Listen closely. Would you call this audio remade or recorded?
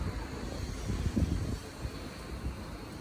recorded